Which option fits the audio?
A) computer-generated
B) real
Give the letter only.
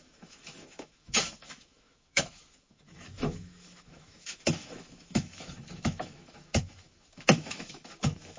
A